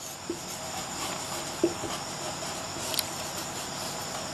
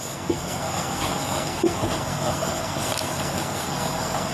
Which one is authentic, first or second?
first